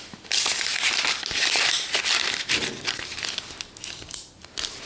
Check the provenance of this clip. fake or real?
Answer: real